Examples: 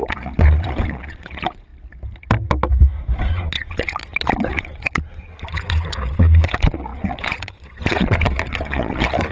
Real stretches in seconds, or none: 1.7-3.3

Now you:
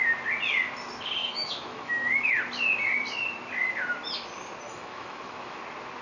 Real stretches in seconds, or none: 0.0-1.2; 2.4-4.7; 5.6-6.0

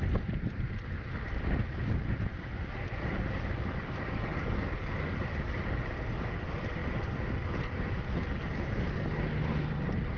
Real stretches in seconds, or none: 0.0-10.2

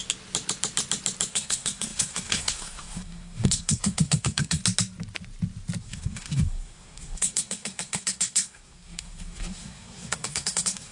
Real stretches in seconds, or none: 0.0-1.3; 4.6-5.8

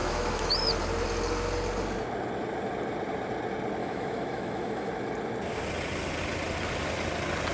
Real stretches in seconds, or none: 0.7-3.8; 4.9-7.5

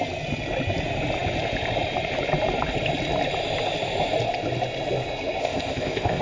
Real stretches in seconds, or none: 0.0-5.4

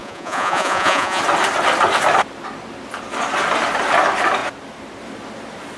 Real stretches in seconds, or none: 1.2-5.8

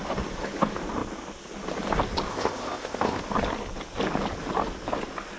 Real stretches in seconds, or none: 0.0-2.3; 3.2-5.4